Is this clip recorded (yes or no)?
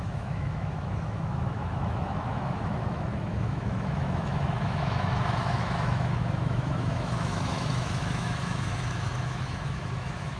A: no